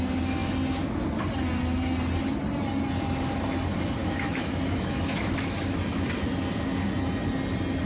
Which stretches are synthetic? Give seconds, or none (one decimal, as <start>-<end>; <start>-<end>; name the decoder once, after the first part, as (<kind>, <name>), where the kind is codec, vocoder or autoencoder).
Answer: 4.0-5.8 (autoencoder, DAC-VAE)